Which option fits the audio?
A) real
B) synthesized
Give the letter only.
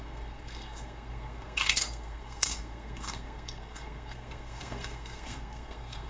B